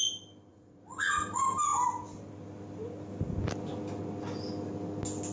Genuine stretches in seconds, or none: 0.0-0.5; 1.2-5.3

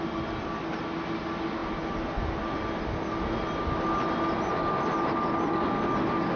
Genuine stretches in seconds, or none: 0.0-6.4